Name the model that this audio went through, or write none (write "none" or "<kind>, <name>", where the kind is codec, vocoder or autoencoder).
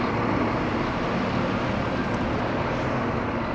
none